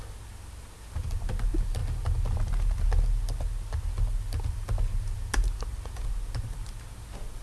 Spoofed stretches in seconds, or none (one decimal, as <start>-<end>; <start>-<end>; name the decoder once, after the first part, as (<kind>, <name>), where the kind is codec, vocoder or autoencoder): none